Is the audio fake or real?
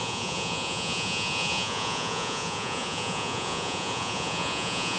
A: fake